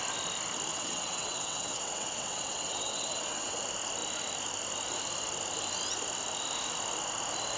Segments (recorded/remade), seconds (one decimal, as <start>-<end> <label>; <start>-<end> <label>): 0.0-0.7 recorded; 0.7-3.6 remade; 3.6-7.6 recorded